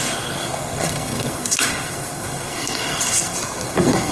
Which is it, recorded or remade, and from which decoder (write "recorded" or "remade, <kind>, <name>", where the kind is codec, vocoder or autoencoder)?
remade, codec, SNAC